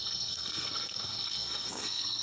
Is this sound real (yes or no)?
no